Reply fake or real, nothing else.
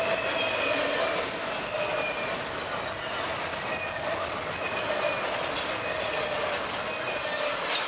real